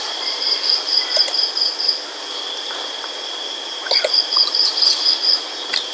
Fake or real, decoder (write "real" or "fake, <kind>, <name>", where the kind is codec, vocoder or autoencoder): real